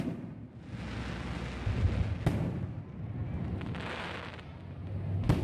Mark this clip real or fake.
real